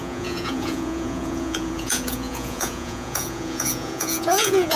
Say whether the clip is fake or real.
fake